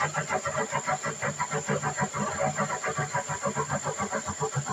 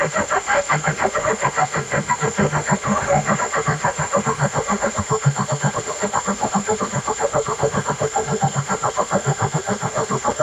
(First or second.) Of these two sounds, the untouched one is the first